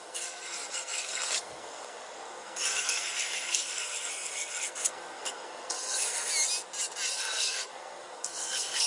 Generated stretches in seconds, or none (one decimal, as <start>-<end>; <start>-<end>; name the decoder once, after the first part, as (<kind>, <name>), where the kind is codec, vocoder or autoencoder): 0.0-6.3 (codec, SNAC); 7.1-8.9